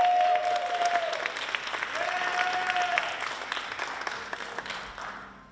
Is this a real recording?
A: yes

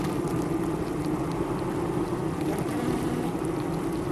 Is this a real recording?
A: yes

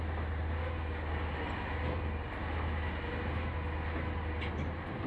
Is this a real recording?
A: yes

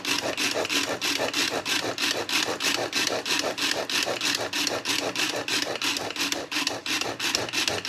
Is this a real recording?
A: yes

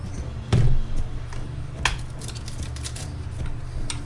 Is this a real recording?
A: yes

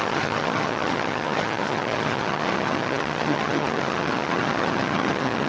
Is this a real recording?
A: no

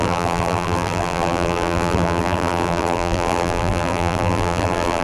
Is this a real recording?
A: no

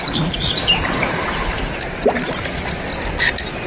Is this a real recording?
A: yes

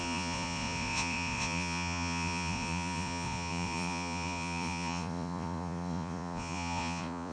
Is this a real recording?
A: no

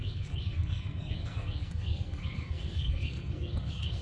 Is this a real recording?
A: no